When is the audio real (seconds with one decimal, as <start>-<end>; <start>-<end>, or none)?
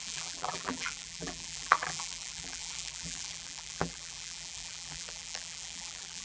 none